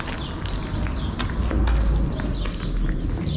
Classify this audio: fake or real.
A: real